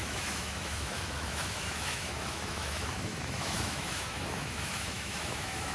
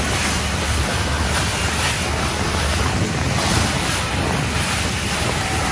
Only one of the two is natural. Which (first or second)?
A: second